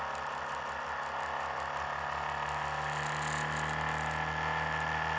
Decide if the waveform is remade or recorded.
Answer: recorded